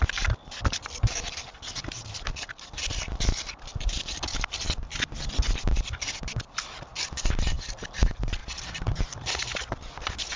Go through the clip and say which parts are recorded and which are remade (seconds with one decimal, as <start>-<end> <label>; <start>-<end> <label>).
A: 0.0-10.4 recorded